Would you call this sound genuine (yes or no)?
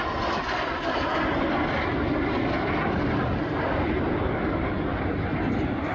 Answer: yes